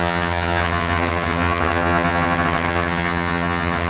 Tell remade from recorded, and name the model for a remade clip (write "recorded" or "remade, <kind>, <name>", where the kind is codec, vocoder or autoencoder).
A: remade, vocoder, HiFi-GAN